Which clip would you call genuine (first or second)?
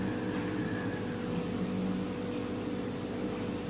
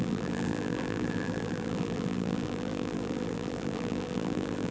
first